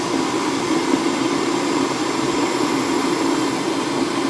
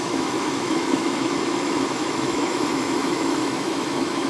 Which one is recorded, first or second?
first